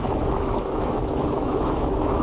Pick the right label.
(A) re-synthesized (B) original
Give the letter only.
A